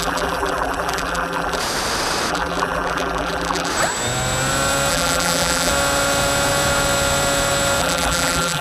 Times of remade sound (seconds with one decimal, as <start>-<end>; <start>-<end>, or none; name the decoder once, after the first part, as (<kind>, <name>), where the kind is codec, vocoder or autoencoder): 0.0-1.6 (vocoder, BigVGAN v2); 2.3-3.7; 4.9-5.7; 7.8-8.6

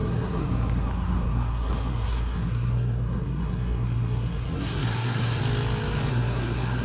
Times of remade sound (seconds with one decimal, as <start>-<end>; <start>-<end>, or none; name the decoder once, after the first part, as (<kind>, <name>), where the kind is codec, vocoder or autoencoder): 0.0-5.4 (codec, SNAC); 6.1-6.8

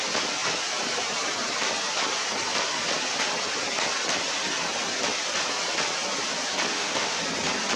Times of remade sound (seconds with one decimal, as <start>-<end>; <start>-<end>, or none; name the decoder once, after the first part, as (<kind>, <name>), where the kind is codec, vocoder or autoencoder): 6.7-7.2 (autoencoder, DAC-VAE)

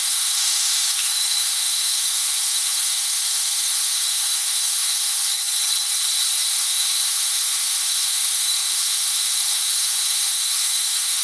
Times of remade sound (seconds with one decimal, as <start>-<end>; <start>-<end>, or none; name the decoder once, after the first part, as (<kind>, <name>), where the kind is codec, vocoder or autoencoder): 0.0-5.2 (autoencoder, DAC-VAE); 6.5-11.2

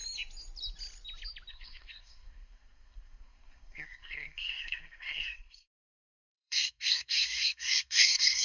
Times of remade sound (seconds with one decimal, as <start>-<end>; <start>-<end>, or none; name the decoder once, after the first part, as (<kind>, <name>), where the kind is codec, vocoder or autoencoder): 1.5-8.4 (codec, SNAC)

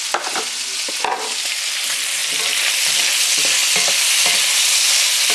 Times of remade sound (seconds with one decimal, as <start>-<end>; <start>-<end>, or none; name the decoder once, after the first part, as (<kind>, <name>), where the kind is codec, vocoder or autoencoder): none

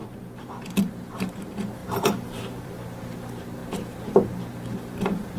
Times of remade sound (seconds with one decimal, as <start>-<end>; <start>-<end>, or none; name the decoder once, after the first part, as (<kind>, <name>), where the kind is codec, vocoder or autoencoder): 0.8-5.4 (vocoder, BigVGAN v2)